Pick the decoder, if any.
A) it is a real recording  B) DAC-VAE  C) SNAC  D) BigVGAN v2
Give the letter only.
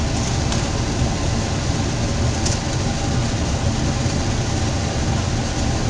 A